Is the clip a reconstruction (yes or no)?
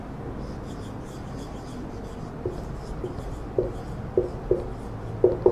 no